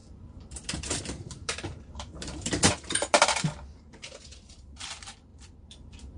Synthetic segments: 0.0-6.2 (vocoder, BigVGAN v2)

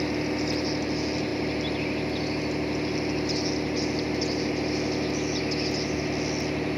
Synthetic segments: none